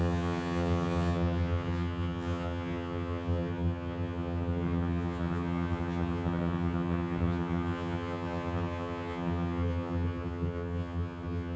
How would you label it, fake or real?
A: fake